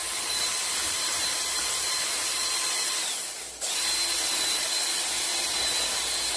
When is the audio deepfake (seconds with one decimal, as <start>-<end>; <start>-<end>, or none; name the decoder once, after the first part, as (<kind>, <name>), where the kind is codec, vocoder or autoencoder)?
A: 0.0-3.0 (vocoder, BigVGAN v2)